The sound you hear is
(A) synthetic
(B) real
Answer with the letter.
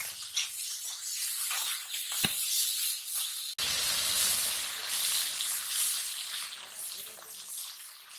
B